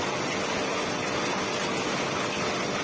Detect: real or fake real